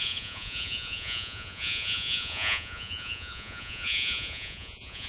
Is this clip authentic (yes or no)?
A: no